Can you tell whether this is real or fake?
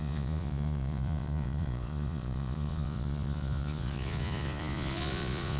fake